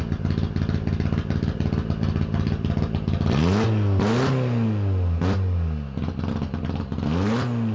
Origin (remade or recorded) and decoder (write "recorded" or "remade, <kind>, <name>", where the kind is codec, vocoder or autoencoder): recorded